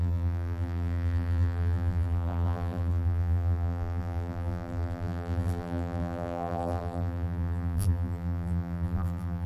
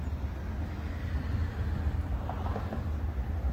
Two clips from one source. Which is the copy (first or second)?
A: first